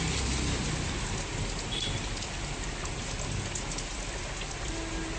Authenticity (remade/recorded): recorded